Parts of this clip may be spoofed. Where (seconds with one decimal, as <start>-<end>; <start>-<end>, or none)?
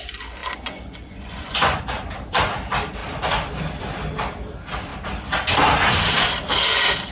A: 0.4-1.8